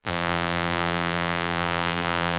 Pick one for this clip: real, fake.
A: fake